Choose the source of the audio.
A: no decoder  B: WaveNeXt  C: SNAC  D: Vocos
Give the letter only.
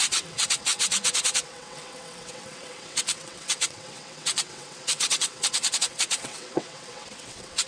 B